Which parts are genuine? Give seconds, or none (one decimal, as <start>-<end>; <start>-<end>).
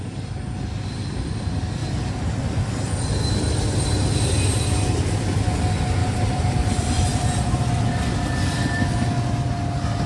0.0-1.8; 3.2-6.0; 8.8-10.1